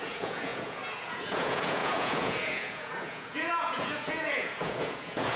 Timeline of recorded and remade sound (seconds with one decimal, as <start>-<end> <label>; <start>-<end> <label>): 0.0-5.4 remade